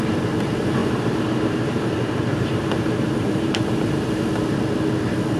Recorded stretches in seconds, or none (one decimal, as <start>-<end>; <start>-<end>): 0.0-0.8; 4.0-5.4